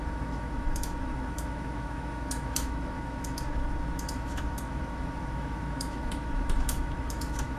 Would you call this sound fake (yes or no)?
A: yes